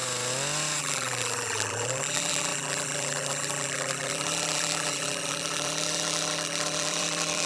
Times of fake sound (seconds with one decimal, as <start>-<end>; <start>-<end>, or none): 0.8-7.5